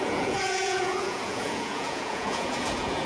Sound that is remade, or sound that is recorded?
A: remade